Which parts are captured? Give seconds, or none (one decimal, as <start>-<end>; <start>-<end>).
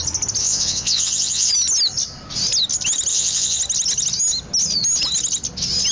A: 0.0-0.4; 1.5-3.1; 3.6-5.9